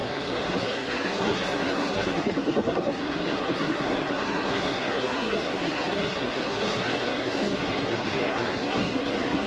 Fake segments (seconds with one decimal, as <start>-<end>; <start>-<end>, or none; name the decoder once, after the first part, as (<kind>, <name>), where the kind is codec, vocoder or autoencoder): 0.0-9.5 (codec, SNAC)